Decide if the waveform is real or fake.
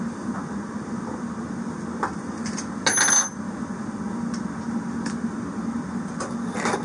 real